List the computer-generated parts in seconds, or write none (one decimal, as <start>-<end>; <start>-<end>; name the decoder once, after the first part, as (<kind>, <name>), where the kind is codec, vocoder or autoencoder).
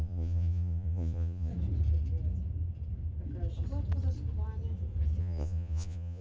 0.0-1.5 (vocoder, Vocos); 5.2-6.2